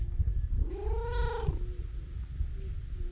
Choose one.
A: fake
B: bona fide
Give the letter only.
B